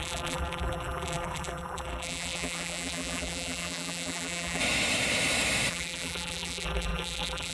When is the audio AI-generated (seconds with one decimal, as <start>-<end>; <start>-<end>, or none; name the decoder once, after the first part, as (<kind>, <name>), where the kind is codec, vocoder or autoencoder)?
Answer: 0.0-4.6 (vocoder, BigVGAN v2); 5.7-7.5